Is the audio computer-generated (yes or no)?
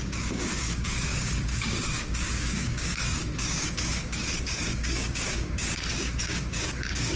yes